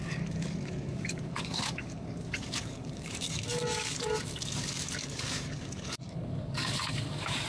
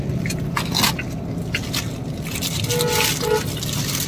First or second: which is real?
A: second